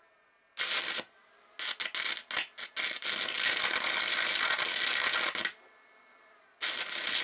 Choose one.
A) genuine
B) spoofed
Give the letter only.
A